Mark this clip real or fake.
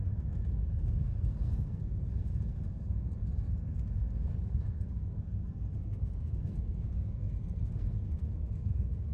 fake